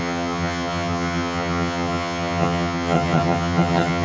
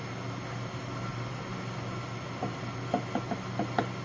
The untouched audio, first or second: second